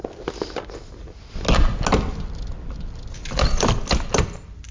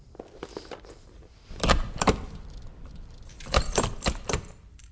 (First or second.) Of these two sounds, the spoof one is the second